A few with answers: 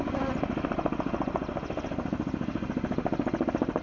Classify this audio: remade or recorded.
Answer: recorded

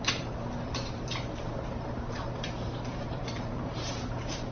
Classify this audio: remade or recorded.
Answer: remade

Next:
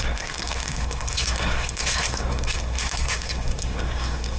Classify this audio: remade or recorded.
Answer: remade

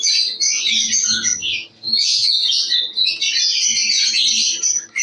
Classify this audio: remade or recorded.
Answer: recorded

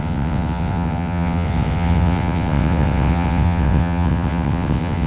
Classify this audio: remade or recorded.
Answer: remade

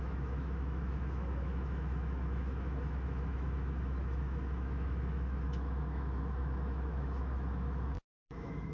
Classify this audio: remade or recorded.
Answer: remade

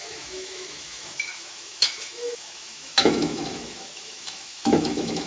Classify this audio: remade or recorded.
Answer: remade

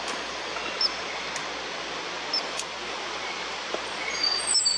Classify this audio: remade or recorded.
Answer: recorded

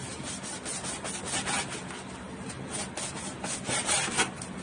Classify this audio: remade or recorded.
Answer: recorded